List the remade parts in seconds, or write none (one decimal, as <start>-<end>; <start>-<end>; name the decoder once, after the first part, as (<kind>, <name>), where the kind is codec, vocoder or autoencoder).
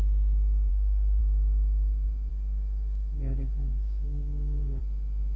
0.7-1.2 (codec, SNAC); 2.3-4.8